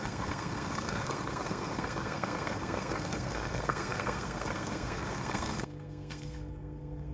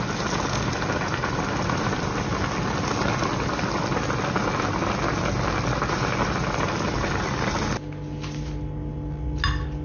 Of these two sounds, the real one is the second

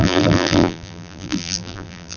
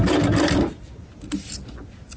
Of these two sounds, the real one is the second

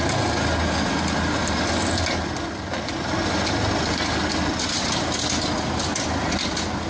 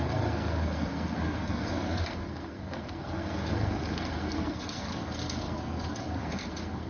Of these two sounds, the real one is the first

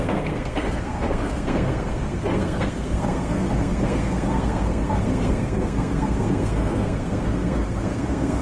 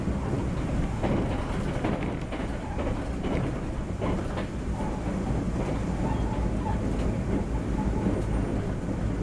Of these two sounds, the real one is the second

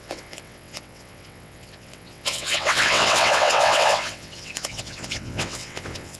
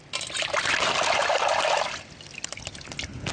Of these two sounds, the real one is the second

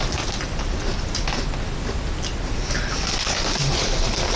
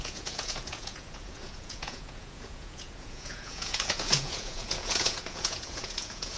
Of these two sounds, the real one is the first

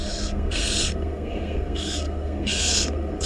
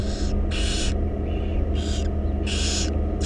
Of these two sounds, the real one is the second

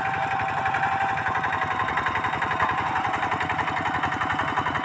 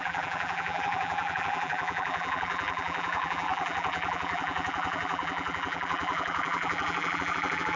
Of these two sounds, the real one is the first